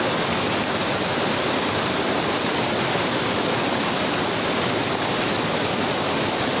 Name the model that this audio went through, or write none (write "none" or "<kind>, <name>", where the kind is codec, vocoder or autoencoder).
none